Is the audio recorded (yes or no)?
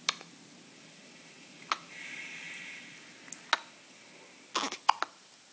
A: yes